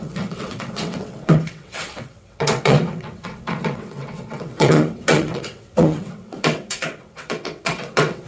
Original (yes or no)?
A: no